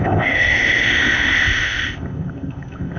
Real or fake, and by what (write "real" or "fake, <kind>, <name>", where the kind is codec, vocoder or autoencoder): fake, codec, ZipCodec